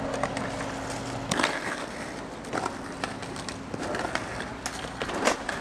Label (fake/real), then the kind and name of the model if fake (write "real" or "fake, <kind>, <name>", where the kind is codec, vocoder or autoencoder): real